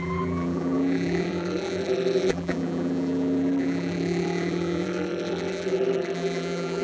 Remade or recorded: remade